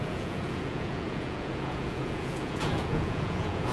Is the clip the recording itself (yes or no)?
no